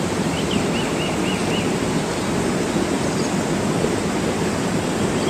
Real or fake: real